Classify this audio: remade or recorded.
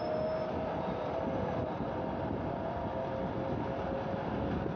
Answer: recorded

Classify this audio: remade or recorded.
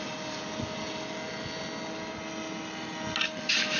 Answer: recorded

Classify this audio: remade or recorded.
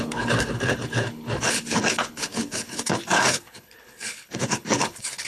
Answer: remade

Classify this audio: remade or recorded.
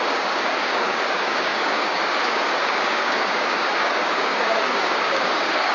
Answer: remade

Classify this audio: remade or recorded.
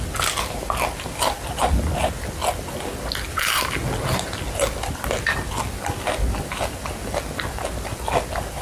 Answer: recorded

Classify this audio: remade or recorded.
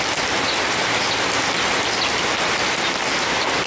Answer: recorded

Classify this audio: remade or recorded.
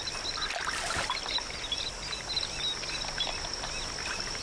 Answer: recorded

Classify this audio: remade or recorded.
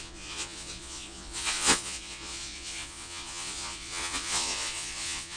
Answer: remade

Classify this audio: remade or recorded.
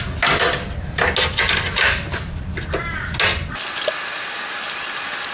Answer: recorded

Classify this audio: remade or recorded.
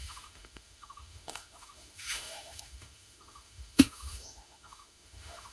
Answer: remade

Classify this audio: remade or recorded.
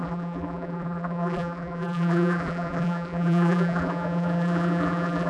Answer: remade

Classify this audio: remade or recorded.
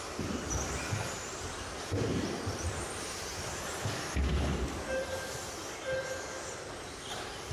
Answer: recorded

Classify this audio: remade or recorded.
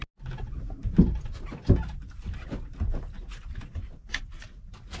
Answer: recorded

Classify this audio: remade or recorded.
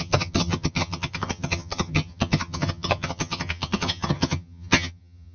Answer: remade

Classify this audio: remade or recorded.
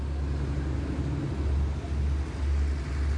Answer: recorded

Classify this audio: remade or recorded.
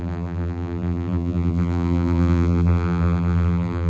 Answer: remade